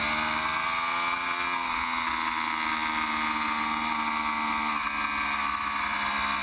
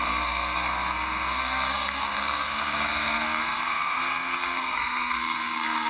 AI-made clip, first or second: second